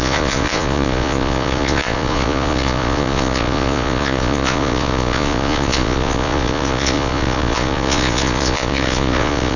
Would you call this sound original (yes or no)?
no